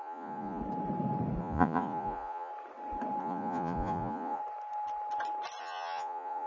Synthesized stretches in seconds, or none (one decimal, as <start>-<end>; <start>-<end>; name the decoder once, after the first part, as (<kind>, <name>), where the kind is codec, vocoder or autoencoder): 0.0-0.6 (vocoder, Vocos); 1.4-2.5; 3.2-4.4; 5.6-6.5